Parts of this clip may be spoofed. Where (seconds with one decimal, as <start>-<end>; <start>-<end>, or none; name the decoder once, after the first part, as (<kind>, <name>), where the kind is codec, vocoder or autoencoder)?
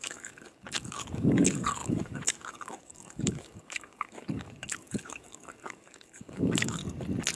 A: 0.0-6.8 (codec, DAC)